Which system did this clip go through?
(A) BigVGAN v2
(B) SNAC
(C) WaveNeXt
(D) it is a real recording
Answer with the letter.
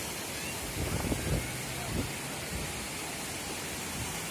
D